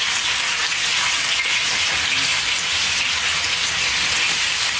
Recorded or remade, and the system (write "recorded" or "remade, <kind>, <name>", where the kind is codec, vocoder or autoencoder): recorded